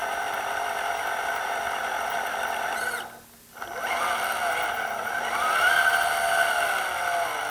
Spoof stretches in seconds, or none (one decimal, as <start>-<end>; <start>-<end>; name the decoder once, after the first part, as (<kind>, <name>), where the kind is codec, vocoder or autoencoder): none